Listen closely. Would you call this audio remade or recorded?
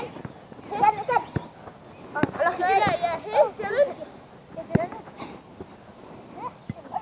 recorded